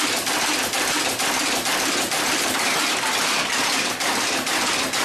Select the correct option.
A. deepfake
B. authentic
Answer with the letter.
A